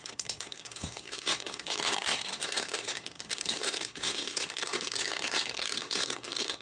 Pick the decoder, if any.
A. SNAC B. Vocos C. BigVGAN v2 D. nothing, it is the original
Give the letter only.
A